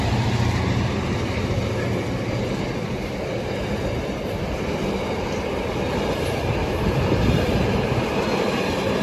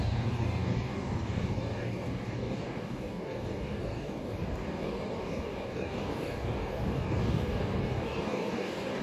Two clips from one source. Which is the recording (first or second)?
first